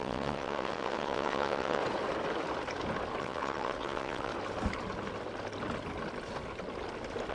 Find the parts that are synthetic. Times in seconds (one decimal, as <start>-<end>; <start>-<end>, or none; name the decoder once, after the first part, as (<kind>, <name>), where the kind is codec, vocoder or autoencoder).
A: 0.0-1.8 (vocoder, WaveNeXt); 3.2-4.3